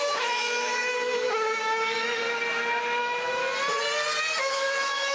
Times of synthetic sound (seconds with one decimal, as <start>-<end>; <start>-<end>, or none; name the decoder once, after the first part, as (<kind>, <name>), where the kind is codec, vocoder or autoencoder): 0.0-2.2 (autoencoder, DAC-VAE); 3.0-3.4; 4.4-5.1